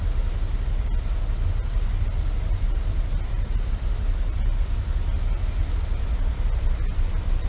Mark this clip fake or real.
real